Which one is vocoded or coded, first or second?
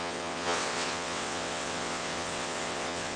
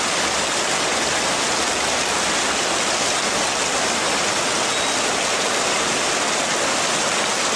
first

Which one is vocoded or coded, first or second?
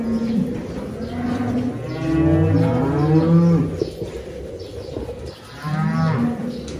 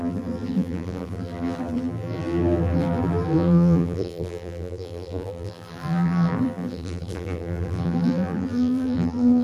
second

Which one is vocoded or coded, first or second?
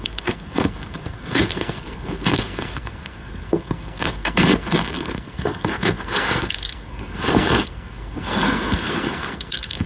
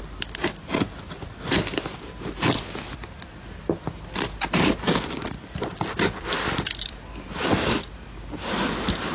first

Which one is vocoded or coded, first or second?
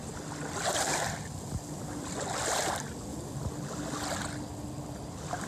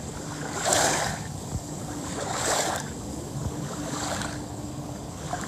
second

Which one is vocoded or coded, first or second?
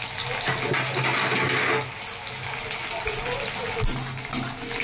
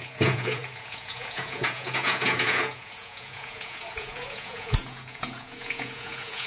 second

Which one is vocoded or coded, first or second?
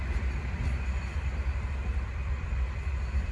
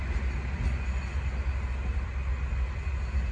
first